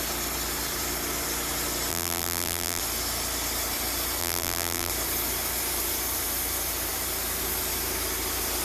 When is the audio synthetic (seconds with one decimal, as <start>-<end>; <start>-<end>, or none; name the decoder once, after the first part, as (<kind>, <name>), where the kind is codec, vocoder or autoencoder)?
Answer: 1.9-2.8 (vocoder, BigVGAN v2); 4.2-4.9